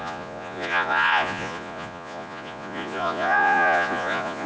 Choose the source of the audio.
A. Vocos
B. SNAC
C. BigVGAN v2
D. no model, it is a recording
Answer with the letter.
A